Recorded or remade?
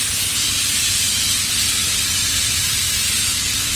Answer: remade